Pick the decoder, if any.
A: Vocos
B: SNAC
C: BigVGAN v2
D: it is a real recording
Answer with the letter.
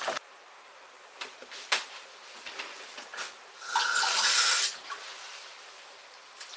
C